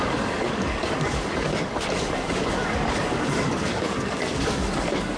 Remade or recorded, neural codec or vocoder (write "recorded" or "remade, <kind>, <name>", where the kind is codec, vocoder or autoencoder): remade, codec, DAC